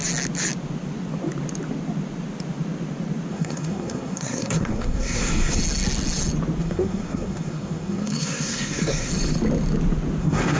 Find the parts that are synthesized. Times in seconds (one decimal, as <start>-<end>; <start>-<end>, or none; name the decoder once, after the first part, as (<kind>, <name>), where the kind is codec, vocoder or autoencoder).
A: 3.3-5.6 (codec, SNAC); 6.6-9.1; 10.2-10.6